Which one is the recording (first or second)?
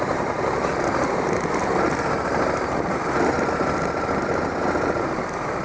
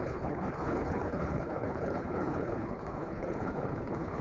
first